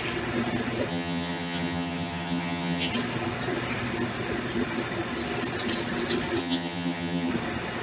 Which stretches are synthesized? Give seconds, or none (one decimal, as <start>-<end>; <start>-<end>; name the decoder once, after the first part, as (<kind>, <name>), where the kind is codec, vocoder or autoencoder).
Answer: 0.9-2.9 (vocoder, HiFi-GAN); 6.4-7.3